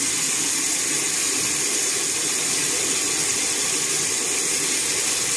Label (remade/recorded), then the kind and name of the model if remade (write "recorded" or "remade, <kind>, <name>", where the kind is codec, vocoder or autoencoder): recorded